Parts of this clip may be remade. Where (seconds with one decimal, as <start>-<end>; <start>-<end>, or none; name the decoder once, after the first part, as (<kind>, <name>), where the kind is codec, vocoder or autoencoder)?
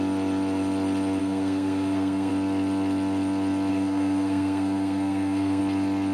1.2-2.3 (codec, SNAC); 3.7-5.6